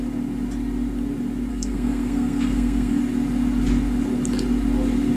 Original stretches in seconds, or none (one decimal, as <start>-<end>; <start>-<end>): 0.0-1.5; 3.0-5.2